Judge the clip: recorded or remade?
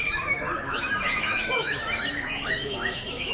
remade